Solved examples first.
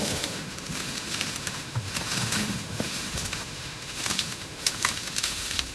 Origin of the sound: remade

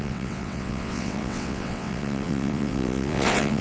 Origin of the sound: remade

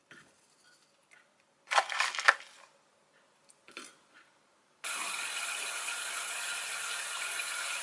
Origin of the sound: recorded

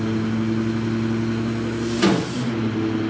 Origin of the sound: recorded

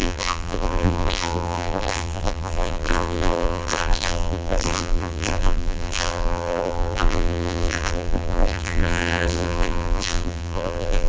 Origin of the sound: remade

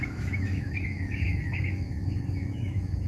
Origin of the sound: remade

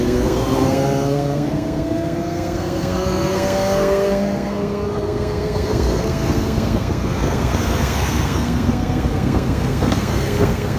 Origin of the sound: remade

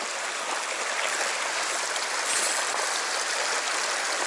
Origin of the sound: recorded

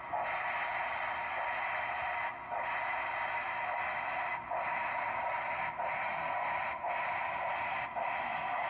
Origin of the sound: recorded